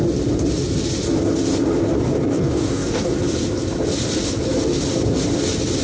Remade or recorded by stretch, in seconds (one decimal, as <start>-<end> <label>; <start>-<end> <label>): 0.0-2.3 recorded; 2.3-3.1 remade; 3.1-5.8 recorded